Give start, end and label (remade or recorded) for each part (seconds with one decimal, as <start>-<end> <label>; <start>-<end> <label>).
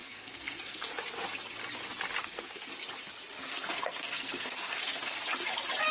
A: 0.0-0.9 remade; 0.9-2.2 recorded; 2.2-2.7 remade; 2.7-3.4 recorded; 3.4-5.2 remade; 5.2-5.9 recorded